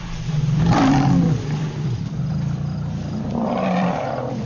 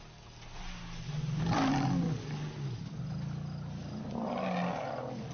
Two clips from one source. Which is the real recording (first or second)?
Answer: second